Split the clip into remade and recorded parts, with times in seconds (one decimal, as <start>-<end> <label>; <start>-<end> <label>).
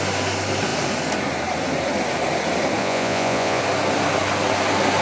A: 0.0-2.8 recorded; 2.8-3.6 remade; 3.6-5.0 recorded